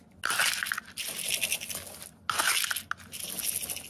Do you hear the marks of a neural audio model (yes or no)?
no